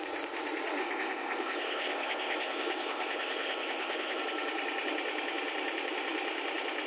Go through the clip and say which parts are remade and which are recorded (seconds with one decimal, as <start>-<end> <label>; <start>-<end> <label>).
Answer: 0.0-0.8 recorded; 0.8-4.2 remade; 4.2-6.9 recorded